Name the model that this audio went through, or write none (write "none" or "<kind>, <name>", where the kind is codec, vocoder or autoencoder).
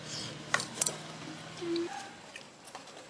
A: vocoder, BigVGAN v2